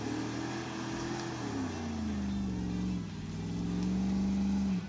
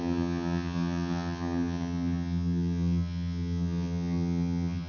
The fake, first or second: second